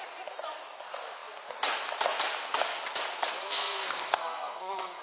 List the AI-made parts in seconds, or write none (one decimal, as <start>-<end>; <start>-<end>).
3.4-5.0